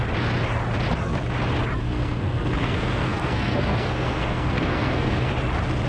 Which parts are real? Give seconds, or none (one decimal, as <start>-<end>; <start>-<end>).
0.0-1.8; 5.3-5.9